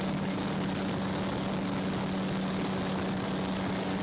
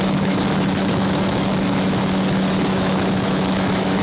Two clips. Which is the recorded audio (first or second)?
first